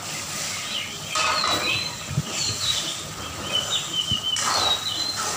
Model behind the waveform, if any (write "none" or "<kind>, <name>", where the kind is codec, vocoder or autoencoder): vocoder, BigVGAN v2